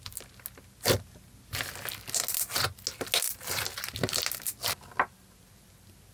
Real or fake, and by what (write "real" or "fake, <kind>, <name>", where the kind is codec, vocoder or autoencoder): real